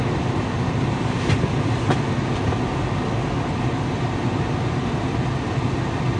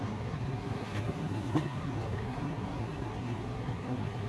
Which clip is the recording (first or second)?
first